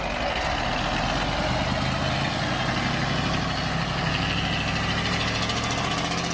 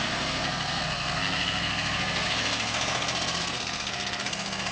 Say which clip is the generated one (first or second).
second